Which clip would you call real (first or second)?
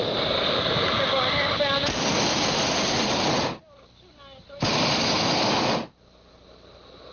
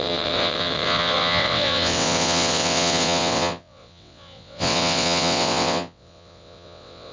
first